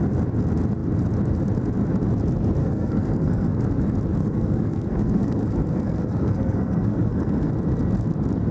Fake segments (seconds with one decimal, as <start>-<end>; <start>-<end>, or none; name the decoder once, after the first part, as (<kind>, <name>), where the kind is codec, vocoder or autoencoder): 2.6-3.6 (codec, SNAC); 4.2-7.5